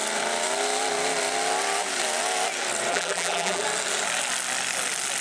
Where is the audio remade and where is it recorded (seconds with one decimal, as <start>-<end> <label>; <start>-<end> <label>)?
0.0-2.9 recorded; 2.9-3.6 remade; 3.6-5.2 recorded